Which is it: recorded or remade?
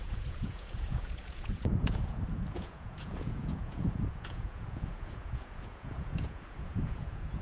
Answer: remade